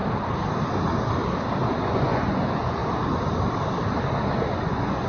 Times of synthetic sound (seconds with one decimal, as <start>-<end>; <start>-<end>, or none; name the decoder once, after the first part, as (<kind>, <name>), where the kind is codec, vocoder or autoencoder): 1.8-2.8 (vocoder, Vocos); 4.5-5.1